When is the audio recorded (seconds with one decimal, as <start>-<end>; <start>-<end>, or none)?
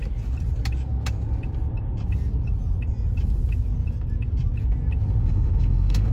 0.0-5.2